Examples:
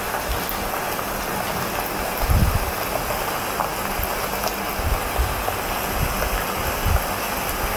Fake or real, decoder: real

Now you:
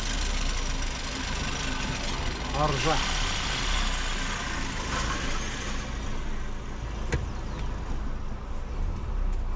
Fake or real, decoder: real